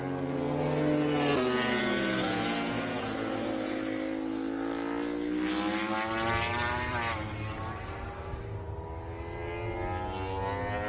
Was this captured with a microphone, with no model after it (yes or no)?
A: yes